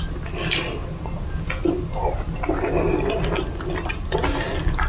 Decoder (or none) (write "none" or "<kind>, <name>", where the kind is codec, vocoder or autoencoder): none